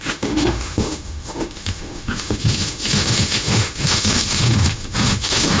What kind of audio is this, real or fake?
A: fake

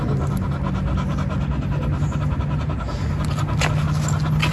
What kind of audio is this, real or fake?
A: real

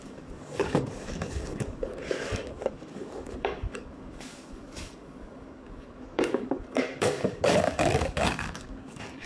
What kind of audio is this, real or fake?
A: fake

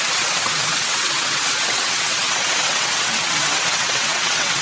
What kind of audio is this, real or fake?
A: fake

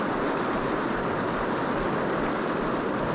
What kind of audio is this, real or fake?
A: real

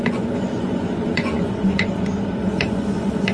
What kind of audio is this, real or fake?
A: fake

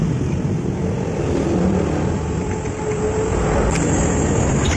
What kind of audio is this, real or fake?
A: fake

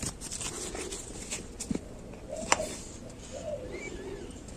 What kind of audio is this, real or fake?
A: real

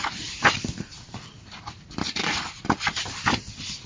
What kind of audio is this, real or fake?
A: fake